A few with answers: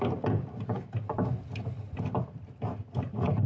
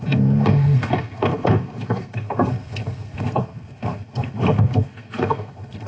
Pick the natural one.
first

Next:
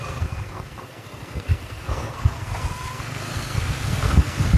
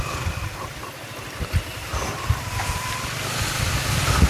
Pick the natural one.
second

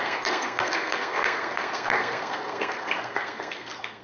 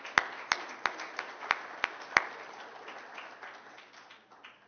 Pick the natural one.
second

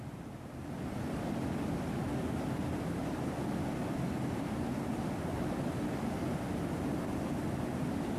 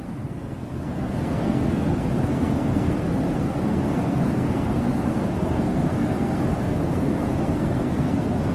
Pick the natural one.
first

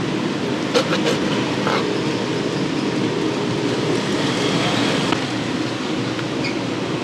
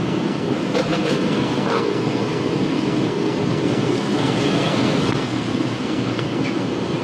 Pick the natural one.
first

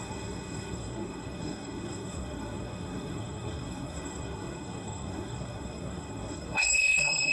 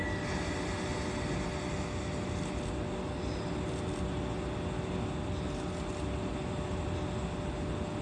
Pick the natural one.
second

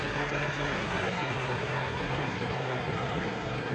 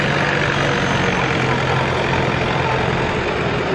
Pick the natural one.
second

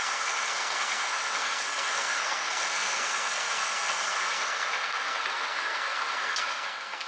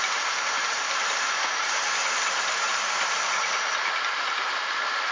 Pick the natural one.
second